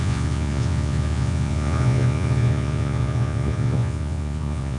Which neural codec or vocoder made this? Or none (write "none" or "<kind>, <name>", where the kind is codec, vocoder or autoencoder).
vocoder, Vocos